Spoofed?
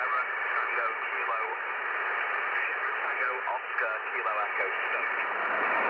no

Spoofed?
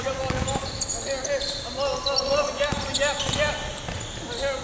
no